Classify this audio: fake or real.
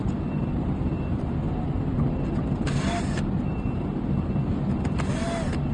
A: real